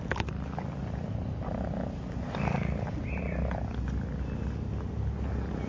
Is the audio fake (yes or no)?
no